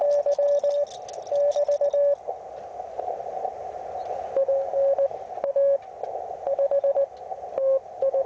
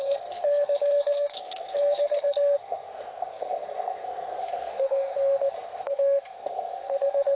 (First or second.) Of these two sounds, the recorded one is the first